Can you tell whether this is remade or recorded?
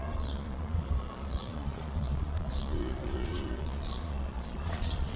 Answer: remade